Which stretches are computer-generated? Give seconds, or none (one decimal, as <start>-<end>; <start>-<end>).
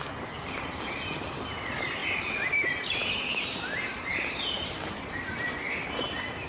2.0-3.2; 3.9-6.0